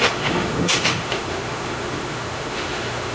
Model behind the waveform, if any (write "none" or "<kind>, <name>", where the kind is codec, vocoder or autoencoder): autoencoder, DAC-VAE